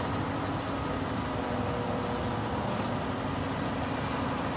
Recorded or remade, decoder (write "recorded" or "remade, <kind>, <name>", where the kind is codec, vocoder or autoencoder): recorded